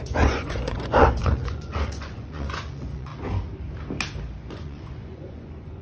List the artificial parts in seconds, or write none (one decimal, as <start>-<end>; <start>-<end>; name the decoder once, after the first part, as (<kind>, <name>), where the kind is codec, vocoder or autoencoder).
0.0-3.1 (vocoder, Vocos); 4.4-5.8